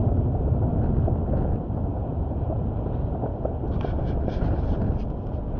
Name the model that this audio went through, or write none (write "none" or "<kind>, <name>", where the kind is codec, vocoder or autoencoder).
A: none